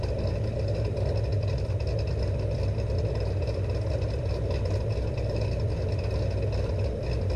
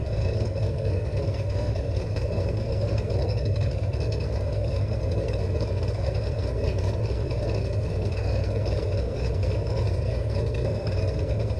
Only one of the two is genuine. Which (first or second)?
first